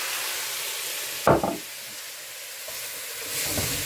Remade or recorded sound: recorded